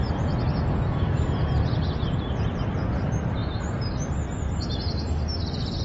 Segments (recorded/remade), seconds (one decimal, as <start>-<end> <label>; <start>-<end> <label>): 0.0-5.8 recorded